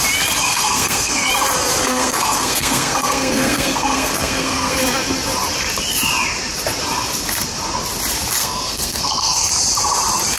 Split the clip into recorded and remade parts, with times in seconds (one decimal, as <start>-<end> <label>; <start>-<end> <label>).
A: 0.0-0.5 recorded; 0.5-1.3 remade; 1.3-1.8 recorded; 1.8-4.8 remade; 4.8-8.4 recorded; 8.4-9.5 remade; 9.5-10.4 recorded